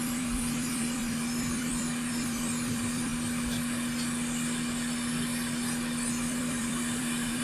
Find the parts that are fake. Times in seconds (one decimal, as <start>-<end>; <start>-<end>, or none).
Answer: 0.0-3.1; 6.1-7.4